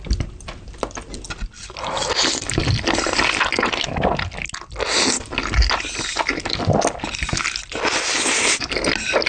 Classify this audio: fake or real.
real